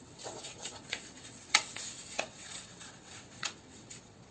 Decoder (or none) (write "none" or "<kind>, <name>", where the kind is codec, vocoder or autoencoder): vocoder, WaveNeXt